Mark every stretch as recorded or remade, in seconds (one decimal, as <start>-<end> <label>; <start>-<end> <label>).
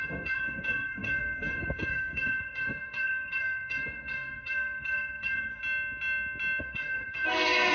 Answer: 0.0-5.6 remade; 5.6-6.6 recorded; 6.6-7.7 remade